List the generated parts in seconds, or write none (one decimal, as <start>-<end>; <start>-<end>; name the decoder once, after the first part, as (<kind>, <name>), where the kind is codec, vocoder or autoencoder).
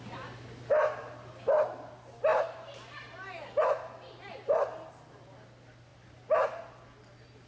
none